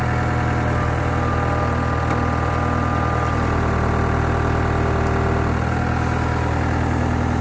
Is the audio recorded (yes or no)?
yes